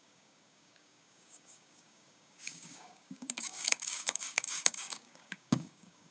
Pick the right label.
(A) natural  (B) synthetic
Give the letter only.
B